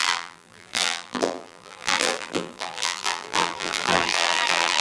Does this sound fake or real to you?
fake